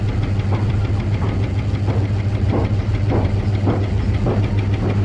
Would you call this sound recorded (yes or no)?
yes